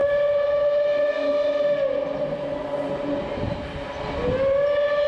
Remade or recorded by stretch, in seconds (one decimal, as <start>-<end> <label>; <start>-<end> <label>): 0.0-5.1 recorded